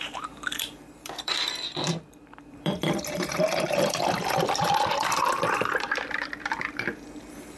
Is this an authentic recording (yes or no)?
no